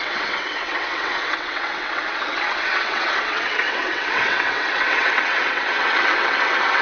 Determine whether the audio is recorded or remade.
remade